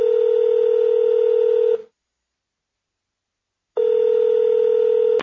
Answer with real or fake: real